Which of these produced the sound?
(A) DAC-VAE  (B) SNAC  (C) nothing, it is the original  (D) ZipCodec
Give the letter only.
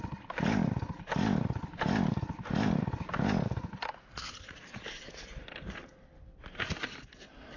C